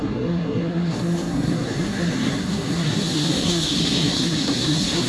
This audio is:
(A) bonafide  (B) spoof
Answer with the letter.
B